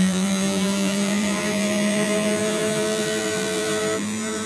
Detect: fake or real fake